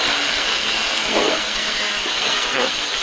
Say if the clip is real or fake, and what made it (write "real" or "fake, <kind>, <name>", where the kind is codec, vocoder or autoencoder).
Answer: fake, codec, SNAC